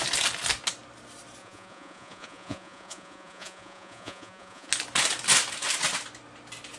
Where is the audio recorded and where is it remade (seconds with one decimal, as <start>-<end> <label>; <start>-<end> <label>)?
0.0-1.4 recorded; 1.4-4.7 remade; 4.7-6.8 recorded